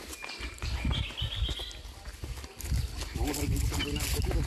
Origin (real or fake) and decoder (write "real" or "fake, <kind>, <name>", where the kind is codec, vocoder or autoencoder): real